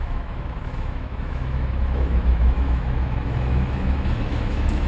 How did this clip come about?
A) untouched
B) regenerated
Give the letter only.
B